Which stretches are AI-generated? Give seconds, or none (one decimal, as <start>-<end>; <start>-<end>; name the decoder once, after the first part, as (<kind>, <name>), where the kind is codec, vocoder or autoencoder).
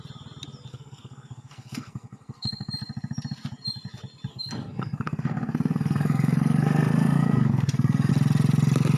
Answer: 0.7-2.7 (codec, SNAC); 4.3-8.1